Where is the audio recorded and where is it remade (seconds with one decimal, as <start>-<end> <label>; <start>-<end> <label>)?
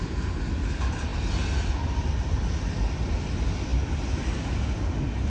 0.0-5.3 recorded